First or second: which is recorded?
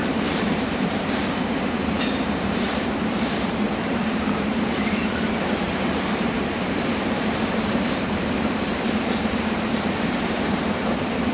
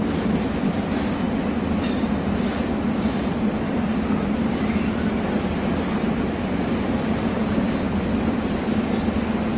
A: second